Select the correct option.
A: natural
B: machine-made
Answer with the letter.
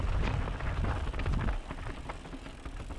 A